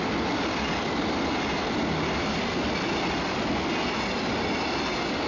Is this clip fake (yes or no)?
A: no